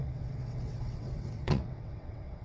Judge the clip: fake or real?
fake